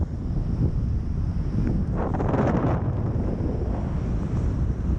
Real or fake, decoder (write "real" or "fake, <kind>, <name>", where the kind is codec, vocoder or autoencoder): real